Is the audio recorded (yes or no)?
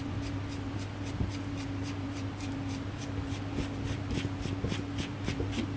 yes